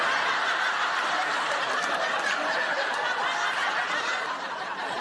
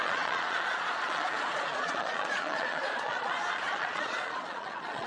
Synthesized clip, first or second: second